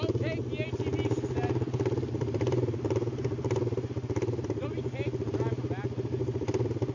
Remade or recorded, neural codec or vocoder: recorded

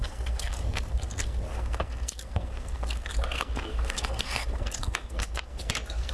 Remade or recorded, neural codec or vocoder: remade, codec, SNAC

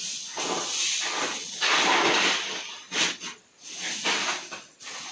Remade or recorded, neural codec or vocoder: recorded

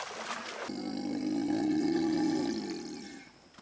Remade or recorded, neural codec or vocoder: recorded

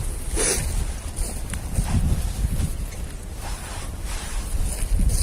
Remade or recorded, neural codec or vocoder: recorded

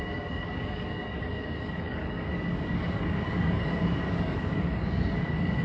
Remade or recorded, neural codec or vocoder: remade, codec, DAC